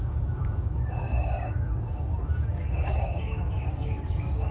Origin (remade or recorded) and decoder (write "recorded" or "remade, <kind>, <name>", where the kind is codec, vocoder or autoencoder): remade, codec, DAC